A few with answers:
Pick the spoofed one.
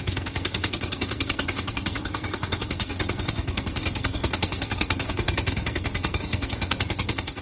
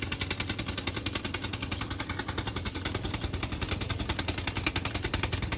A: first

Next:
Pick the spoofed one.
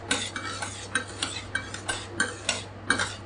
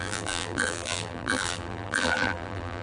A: second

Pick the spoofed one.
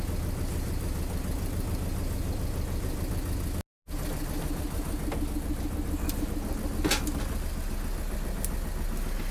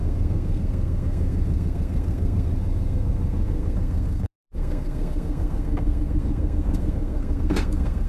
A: second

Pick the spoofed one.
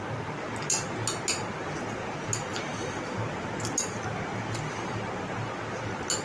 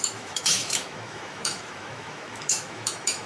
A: second